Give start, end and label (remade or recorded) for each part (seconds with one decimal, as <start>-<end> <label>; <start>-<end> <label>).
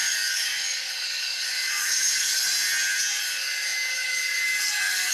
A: 0.0-2.4 remade; 2.4-3.2 recorded; 3.2-5.1 remade